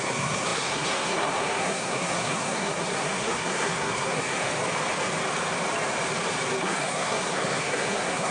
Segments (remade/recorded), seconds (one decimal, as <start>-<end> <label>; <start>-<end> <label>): 0.0-4.5 remade; 4.5-6.6 recorded; 6.6-8.3 remade